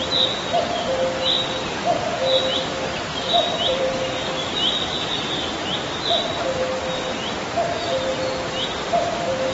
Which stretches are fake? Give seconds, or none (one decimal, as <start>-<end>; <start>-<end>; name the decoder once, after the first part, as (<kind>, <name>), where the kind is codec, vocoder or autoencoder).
3.1-3.9 (vocoder, BigVGAN v2)